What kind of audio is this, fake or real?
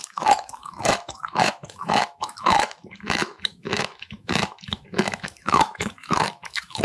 fake